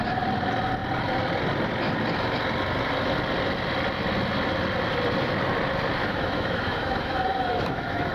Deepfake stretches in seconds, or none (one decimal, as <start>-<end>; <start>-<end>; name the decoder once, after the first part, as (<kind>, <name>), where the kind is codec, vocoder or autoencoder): 6.0-8.1 (autoencoder, DAC-VAE)